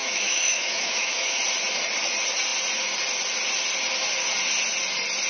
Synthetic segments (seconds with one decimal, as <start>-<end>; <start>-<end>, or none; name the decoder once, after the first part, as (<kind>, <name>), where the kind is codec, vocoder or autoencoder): 0.0-1.4 (autoencoder, DAC-VAE)